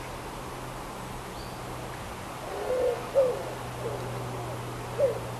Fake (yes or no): no